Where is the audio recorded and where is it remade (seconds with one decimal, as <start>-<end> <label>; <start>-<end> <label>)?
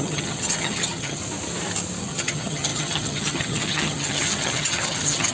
0.0-1.2 remade; 1.2-2.0 recorded; 2.0-5.3 remade